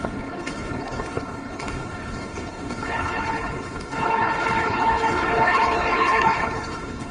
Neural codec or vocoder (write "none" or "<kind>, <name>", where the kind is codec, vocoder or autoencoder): codec, HILCodec